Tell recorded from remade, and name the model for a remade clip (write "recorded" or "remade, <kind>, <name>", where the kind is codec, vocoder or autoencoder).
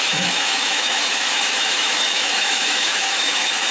remade, autoencoder, DAC-VAE